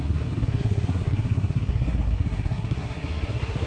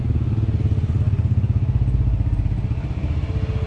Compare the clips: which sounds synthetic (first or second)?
first